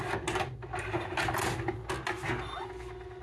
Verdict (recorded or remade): recorded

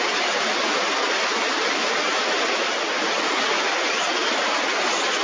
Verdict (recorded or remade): recorded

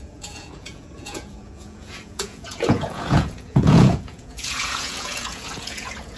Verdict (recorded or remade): remade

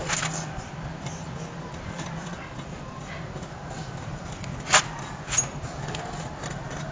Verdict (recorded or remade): recorded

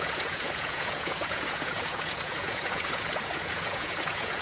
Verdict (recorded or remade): remade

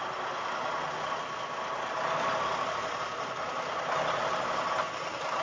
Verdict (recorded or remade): recorded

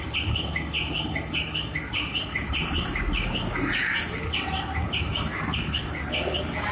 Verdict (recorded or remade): recorded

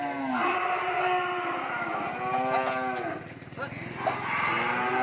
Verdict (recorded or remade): recorded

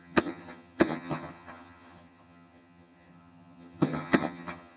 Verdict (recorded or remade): remade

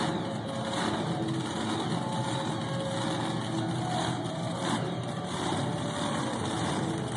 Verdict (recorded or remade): recorded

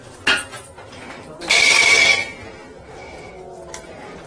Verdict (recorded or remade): recorded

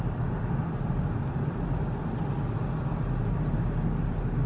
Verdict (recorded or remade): recorded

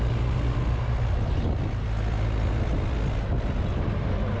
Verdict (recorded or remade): recorded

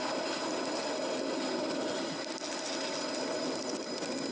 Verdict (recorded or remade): recorded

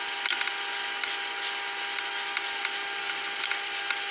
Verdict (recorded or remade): recorded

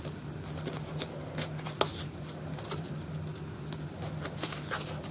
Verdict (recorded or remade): recorded